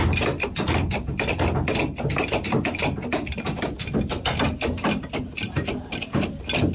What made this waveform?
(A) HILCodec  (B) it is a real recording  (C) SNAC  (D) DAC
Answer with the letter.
B